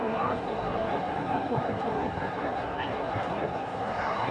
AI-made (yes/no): yes